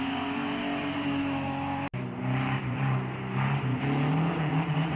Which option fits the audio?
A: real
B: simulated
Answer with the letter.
A